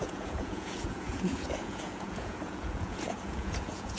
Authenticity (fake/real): fake